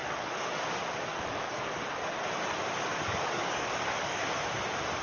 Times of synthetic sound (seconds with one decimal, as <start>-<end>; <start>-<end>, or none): 0.0-0.6; 1.1-2.1; 2.9-4.3